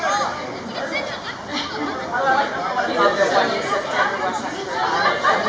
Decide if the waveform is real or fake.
real